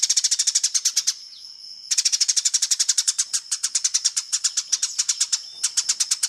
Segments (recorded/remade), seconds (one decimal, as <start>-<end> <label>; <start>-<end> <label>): 0.0-0.9 recorded; 0.9-4.4 remade; 4.4-6.3 recorded